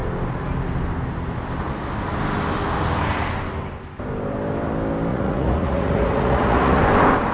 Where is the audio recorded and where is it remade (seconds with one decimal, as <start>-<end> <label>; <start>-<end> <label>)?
0.0-5.1 recorded; 5.1-6.8 remade; 6.8-7.3 recorded